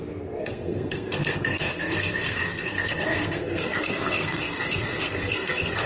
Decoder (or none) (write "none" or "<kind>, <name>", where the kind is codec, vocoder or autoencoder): codec, SNAC